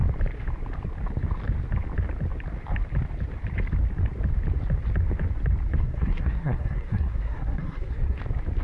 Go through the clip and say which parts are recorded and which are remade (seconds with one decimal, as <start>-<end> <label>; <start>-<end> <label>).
0.0-5.8 recorded; 5.8-8.2 remade; 8.2-8.6 recorded